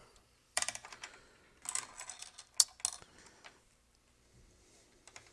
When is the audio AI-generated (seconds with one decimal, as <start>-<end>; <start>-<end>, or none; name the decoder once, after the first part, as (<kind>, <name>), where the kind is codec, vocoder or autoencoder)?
0.0-1.1 (vocoder, BigVGAN v2)